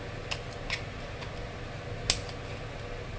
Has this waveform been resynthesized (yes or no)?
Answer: no